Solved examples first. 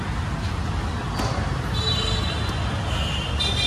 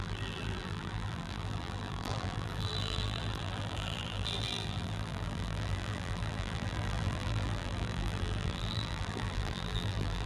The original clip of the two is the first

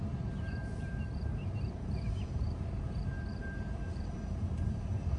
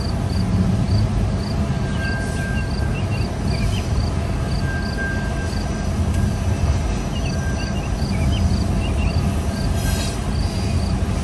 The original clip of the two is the second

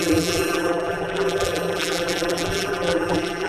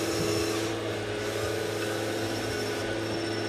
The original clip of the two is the second